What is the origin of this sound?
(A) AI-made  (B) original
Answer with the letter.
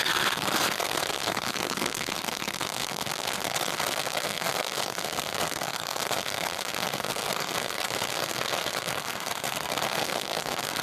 A